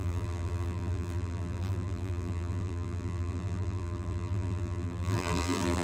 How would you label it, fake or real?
fake